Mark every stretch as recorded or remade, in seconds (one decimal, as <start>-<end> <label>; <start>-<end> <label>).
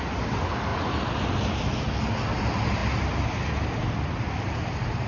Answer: 0.0-5.1 recorded